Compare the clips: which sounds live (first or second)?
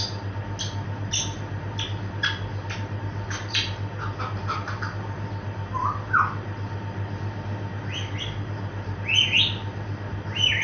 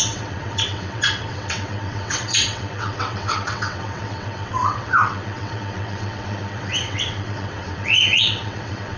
first